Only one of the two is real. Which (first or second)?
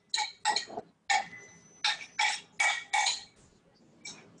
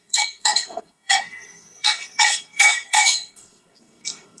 first